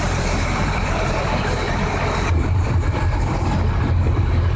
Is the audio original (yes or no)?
no